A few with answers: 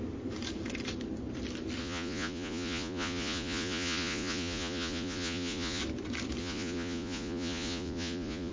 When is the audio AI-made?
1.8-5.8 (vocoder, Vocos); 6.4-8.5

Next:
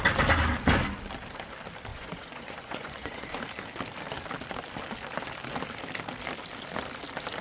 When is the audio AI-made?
1.9-3.4 (vocoder, Vocos)

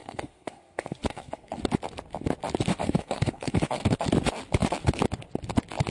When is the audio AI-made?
0.0-1.6 (codec, SNAC); 2.7-4.0

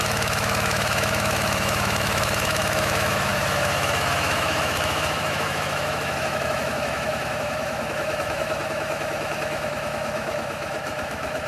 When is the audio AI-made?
0.0-11.5 (autoencoder, DAC-VAE)

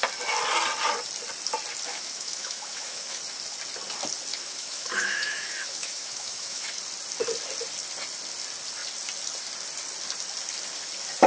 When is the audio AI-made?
1.9-3.2 (autoencoder, DAC-VAE); 4.3-6.8

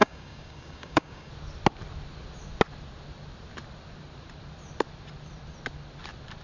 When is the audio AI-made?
0.0-1.3 (codec, DAC)

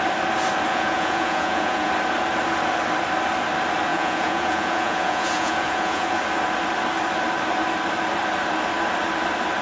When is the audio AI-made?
0.7-1.9 (vocoder, Vocos); 3.9-6.2